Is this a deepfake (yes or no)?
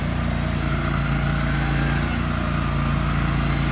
no